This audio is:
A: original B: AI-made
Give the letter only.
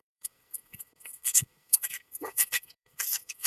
B